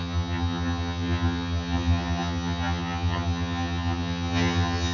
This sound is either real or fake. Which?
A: fake